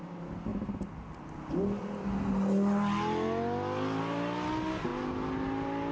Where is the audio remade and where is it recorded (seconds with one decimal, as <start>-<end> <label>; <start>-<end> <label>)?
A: 0.0-5.9 recorded